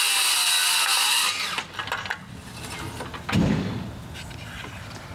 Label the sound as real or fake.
real